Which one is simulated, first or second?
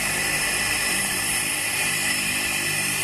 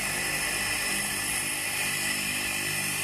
first